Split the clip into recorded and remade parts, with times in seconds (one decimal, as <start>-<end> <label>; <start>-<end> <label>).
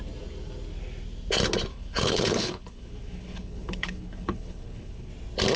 0.0-1.7 recorded; 1.7-5.1 remade; 5.1-5.6 recorded